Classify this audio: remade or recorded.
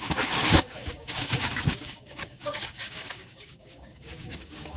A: remade